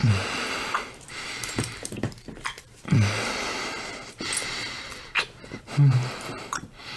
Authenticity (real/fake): fake